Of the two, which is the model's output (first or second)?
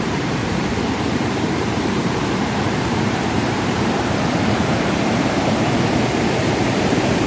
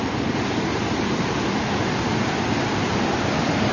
first